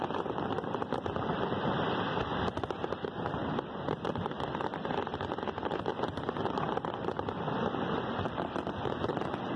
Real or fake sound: fake